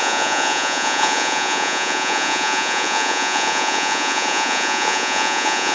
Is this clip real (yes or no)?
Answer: no